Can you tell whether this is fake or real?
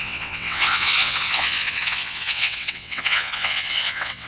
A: fake